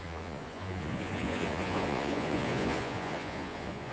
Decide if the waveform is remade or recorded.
remade